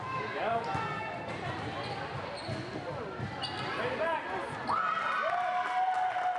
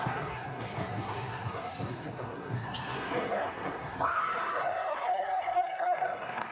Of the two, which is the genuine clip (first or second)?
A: first